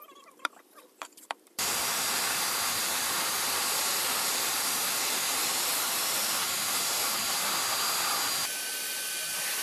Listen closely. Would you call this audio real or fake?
fake